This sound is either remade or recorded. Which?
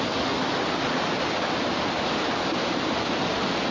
recorded